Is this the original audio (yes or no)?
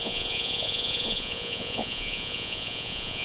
no